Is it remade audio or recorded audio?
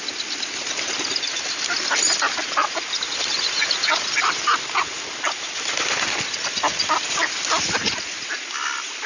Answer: recorded